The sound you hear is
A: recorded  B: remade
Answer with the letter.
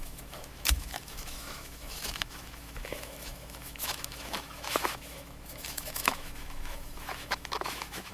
B